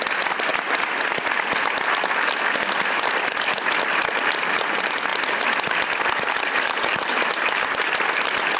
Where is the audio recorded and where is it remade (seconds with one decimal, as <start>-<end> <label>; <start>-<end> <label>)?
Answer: 0.0-0.5 remade; 0.5-3.0 recorded; 3.0-5.1 remade; 5.1-6.2 recorded; 6.2-8.6 remade